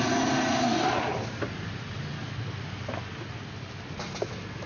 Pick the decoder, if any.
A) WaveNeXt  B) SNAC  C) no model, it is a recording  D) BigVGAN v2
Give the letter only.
C